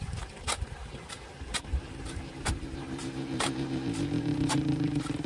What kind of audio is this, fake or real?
fake